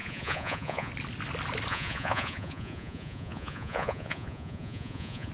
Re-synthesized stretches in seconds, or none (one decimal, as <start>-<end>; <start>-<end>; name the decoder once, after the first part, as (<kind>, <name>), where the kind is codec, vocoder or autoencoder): 0.0-0.9 (vocoder, Vocos); 1.7-5.3

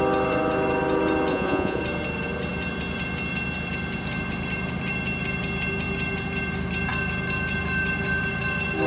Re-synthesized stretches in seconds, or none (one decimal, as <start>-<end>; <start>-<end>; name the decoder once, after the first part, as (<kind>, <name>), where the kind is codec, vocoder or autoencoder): 1.3-1.8 (vocoder, Vocos)

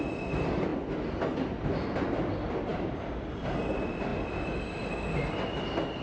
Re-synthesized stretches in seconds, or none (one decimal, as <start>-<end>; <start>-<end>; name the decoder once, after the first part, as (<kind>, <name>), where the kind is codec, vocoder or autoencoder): none

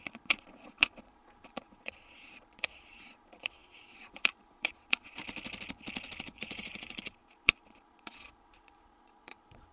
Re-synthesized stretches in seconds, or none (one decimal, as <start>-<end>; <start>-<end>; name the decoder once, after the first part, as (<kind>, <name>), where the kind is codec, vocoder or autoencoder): 0.0-5.2 (vocoder, Vocos); 6.2-9.7

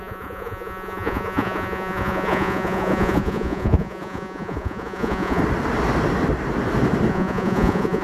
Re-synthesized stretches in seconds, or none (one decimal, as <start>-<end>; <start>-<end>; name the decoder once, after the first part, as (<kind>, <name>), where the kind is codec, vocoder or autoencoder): 0.0-5.4 (vocoder, Vocos); 7.1-8.0

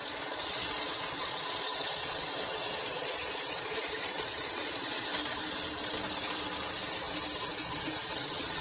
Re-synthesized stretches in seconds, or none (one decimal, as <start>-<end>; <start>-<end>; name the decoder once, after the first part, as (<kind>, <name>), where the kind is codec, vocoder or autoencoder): 0.0-5.0 (vocoder, Vocos); 7.5-8.6